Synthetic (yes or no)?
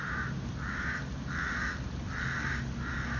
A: no